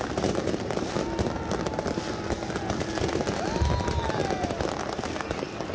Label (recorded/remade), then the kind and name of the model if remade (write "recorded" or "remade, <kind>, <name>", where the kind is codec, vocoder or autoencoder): recorded